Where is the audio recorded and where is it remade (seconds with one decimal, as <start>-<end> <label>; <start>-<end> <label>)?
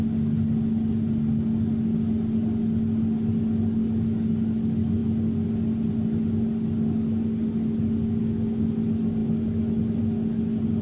0.0-10.8 recorded